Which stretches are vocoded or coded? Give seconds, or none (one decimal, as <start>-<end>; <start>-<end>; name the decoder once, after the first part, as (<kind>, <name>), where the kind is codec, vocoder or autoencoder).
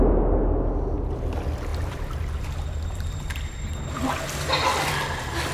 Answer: none